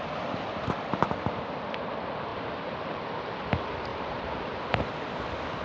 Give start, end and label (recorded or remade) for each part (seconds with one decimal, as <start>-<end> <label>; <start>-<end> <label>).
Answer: 0.0-2.3 recorded; 2.3-3.1 remade; 3.1-3.9 recorded; 3.9-4.6 remade; 4.6-5.6 recorded

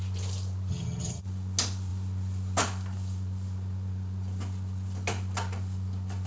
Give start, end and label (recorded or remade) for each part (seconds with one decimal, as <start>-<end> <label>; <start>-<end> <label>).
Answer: 0.0-0.7 recorded; 0.7-1.2 remade; 1.2-6.3 recorded

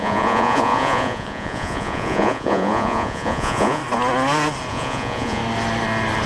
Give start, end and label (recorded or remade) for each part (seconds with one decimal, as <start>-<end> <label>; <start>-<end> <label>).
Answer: 0.0-3.8 remade; 3.8-4.7 recorded; 4.7-5.4 remade; 5.4-6.3 recorded